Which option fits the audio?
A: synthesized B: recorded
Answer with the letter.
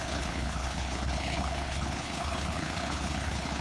A